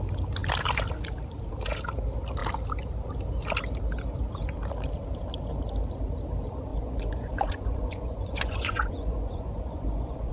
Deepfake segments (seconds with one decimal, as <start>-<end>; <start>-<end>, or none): 6.7-10.3